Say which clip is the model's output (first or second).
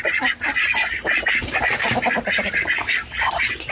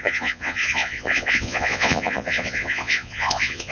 second